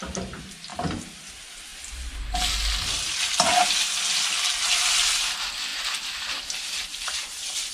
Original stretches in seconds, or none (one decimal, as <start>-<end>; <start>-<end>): 0.0-0.7; 1.2-5.7